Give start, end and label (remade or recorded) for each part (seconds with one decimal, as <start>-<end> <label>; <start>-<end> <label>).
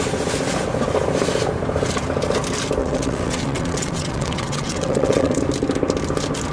0.0-2.8 recorded; 2.8-5.4 remade; 5.4-6.5 recorded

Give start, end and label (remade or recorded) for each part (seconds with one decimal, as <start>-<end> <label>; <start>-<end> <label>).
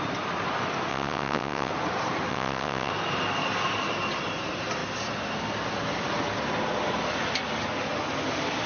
0.0-0.9 recorded; 0.9-1.7 remade; 1.7-2.3 recorded; 2.3-2.9 remade; 2.9-8.7 recorded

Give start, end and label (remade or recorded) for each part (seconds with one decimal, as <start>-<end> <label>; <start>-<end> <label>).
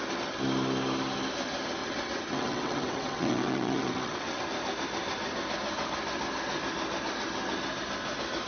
0.0-1.8 recorded; 1.8-4.4 remade; 4.4-8.5 recorded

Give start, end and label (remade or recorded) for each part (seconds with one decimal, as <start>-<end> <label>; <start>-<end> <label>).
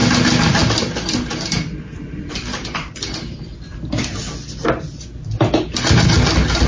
0.0-6.7 recorded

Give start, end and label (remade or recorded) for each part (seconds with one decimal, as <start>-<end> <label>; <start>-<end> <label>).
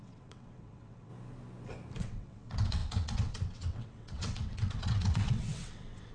0.0-1.1 remade; 1.1-2.0 recorded; 2.0-6.1 remade